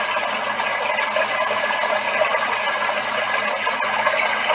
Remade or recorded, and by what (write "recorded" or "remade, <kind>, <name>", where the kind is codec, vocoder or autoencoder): recorded